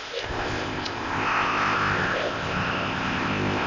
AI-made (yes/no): yes